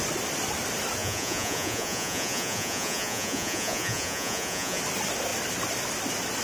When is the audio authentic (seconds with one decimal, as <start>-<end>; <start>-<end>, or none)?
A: 0.0-1.0; 4.8-6.4